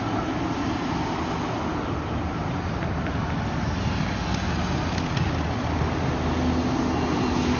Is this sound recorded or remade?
recorded